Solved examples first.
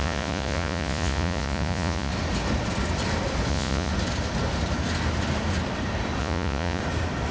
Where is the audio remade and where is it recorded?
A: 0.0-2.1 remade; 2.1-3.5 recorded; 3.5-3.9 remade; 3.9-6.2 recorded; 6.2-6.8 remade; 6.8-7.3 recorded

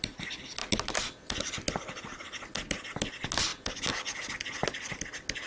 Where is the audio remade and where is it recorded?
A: 0.0-5.5 recorded

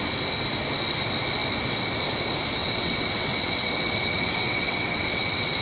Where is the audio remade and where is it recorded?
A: 0.0-2.6 recorded; 2.6-5.6 remade

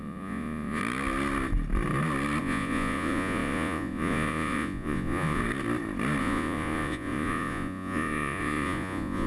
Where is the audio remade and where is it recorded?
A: 0.0-0.8 remade; 0.8-2.4 recorded; 2.4-5.4 remade; 5.4-6.2 recorded; 6.2-9.3 remade

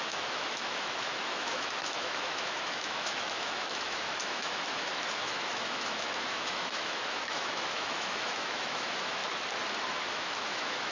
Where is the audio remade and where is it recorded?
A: 0.0-9.2 remade; 9.2-10.1 recorded; 10.1-10.9 remade

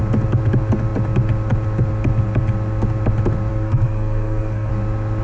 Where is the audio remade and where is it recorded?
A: 0.0-3.5 recorded; 3.5-4.7 remade; 4.7-5.2 recorded